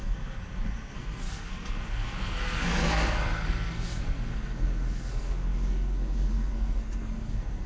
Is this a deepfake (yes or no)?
yes